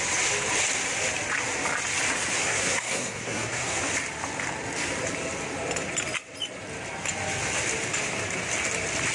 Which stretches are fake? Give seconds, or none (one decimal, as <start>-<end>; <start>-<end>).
2.4-3.8